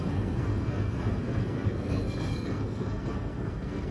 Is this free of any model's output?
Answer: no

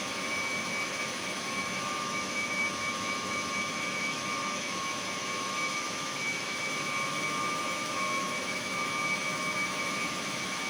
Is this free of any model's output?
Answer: no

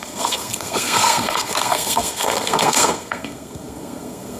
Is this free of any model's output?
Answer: no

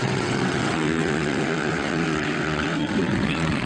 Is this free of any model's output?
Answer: no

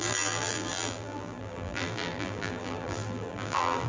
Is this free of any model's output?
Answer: no